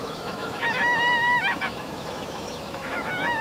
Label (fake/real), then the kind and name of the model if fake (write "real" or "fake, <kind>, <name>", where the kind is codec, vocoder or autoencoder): fake, autoencoder, DAC-VAE